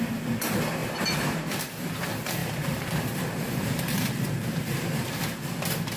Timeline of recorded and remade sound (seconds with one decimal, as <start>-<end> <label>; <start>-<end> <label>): 0.0-0.8 recorded; 0.8-1.4 remade; 1.4-2.4 recorded; 2.4-5.2 remade; 5.2-6.0 recorded